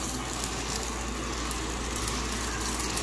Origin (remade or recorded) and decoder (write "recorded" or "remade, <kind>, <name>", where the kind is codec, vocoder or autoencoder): recorded